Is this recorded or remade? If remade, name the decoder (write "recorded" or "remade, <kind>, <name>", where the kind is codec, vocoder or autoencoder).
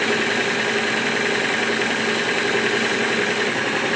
recorded